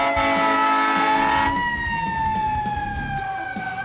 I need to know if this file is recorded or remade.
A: recorded